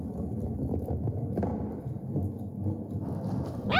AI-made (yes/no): no